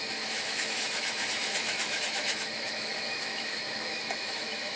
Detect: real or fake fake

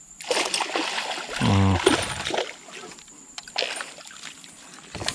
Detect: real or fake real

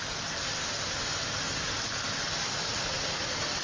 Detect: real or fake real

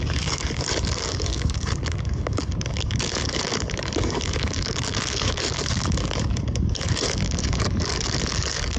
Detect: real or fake fake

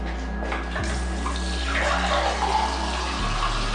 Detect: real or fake real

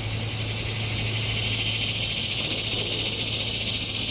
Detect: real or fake real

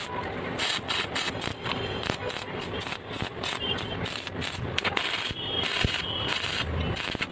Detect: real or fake real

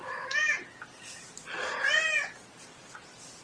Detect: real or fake real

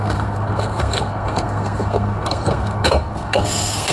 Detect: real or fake fake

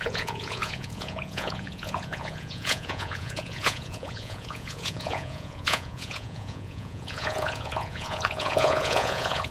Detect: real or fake fake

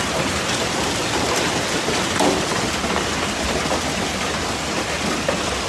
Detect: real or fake real